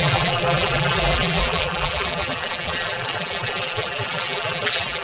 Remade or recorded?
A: remade